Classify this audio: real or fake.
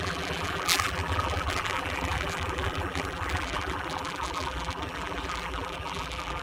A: fake